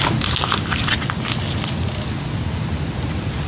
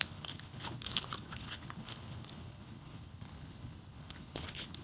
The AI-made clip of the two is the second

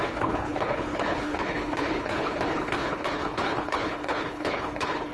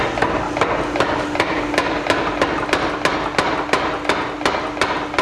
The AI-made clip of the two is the first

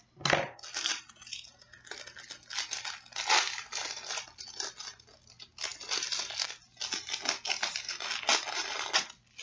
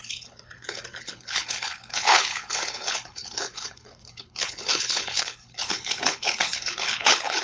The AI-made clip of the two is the second